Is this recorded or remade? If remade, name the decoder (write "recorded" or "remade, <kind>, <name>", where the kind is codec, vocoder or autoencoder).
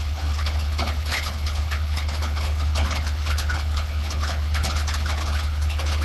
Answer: remade, codec, HILCodec